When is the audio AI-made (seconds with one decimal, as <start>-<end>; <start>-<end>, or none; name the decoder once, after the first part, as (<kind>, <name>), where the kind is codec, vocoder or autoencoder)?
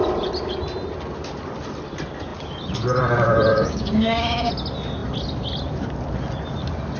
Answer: 3.5-4.5 (codec, DAC)